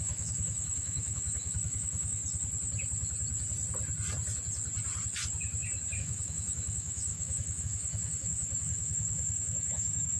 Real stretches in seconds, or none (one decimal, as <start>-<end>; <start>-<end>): 2.2-6.0